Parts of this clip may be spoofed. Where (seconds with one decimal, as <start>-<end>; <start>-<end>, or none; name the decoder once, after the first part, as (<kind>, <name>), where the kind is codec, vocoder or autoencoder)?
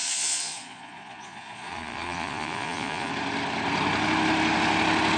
0.0-3.1 (vocoder, Vocos)